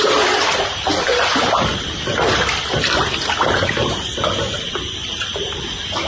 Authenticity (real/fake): fake